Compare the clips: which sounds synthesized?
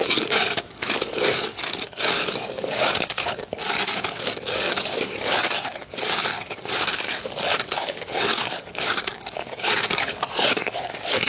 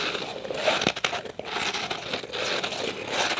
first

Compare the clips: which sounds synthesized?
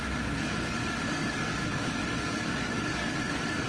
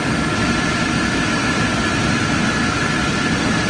first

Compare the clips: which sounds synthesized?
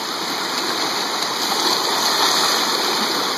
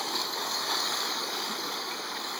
second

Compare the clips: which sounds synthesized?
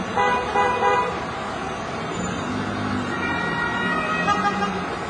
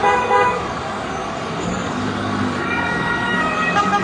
second